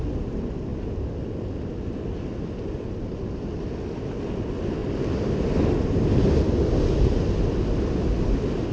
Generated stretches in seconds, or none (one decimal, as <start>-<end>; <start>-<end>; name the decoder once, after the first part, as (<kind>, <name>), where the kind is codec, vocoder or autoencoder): none